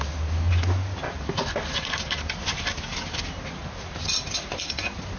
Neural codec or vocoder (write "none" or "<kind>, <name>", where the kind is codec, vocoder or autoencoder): none